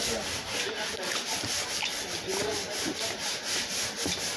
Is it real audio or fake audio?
real